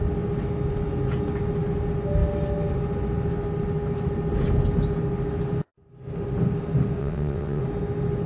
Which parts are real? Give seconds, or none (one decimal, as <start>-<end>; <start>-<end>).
0.0-7.0; 7.6-8.3